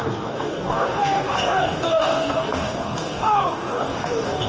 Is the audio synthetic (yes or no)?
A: yes